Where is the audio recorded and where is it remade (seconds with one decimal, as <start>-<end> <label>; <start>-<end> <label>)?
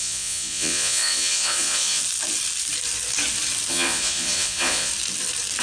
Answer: 0.0-2.0 remade; 2.0-3.7 recorded; 3.7-4.9 remade; 4.9-5.6 recorded